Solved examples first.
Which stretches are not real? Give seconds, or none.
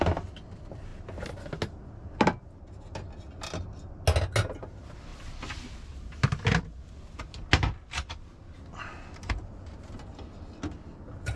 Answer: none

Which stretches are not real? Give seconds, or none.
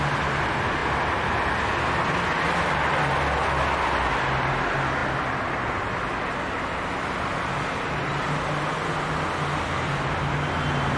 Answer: none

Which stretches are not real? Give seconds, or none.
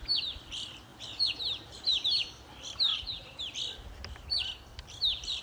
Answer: 0.9-1.4; 2.9-3.4